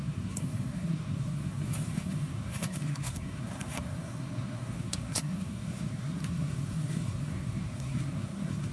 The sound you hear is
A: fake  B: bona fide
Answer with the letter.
A